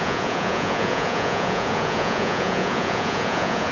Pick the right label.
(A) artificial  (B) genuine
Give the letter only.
A